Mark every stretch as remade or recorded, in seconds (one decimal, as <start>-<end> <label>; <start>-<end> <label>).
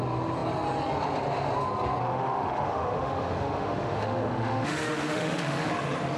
0.0-2.0 recorded; 2.0-5.7 remade; 5.7-6.2 recorded